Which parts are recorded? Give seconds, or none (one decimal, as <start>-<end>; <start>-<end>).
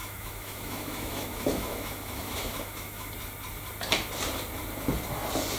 3.1-5.6